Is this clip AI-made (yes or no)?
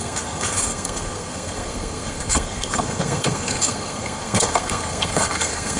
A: yes